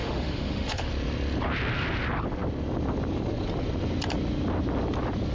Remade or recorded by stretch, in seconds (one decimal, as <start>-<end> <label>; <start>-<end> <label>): 0.0-0.9 remade; 0.9-5.3 recorded